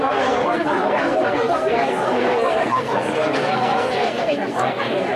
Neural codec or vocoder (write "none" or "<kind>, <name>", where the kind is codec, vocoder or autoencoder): codec, SNAC